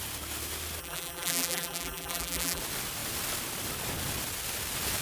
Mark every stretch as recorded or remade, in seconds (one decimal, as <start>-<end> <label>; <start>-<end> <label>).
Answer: 0.0-0.8 recorded; 0.8-2.6 remade; 2.6-5.0 recorded

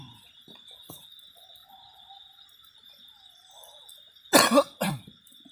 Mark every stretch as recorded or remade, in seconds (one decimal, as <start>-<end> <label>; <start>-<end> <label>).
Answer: 0.0-5.5 recorded

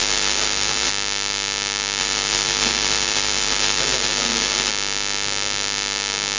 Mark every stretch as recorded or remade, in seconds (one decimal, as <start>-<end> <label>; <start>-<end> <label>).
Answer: 0.0-0.9 remade; 0.9-2.0 recorded; 2.0-4.7 remade; 4.7-6.4 recorded